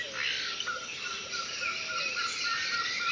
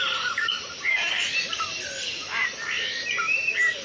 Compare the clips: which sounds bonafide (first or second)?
first